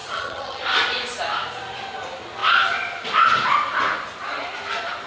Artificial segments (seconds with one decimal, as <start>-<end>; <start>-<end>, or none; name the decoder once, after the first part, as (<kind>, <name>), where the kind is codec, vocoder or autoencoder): 0.0-0.6 (vocoder, HiFi-GAN)

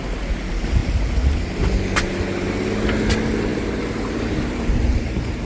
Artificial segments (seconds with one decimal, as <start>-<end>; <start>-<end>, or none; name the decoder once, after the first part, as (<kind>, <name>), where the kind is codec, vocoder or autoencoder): 3.5-5.4 (vocoder, BigVGAN v2)

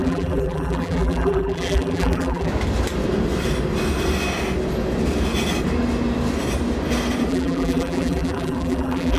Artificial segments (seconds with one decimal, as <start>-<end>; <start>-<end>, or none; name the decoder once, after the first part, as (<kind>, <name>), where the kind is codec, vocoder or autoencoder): 0.0-2.5 (vocoder, BigVGAN v2); 7.3-9.2

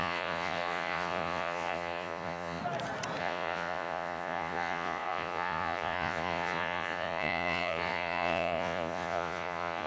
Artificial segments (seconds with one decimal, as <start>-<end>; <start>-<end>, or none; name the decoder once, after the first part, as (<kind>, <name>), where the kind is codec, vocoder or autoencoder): 0.0-2.6 (vocoder, Vocos); 3.2-9.9

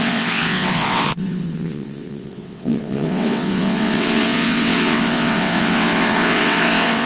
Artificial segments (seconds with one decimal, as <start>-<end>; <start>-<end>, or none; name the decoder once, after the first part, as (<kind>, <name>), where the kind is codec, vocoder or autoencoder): 0.0-7.1 (vocoder, WaveNeXt)

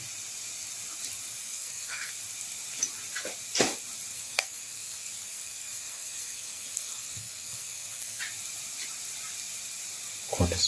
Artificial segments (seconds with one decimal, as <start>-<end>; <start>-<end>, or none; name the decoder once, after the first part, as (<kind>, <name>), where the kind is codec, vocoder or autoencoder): 1.4-2.1 (codec, SNAC); 4.1-8.2